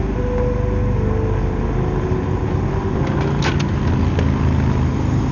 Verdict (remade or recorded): recorded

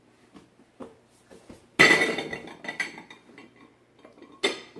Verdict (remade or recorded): recorded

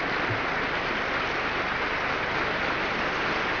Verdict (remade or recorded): recorded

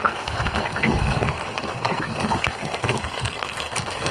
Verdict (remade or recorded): remade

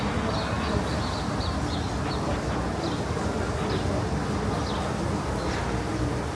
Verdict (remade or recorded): recorded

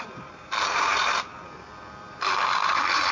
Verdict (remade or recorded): remade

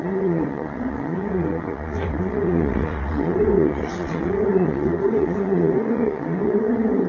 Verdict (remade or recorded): remade